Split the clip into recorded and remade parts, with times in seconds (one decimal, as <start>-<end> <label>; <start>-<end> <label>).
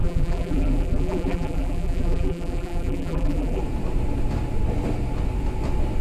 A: 0.0-3.6 remade; 3.6-6.0 recorded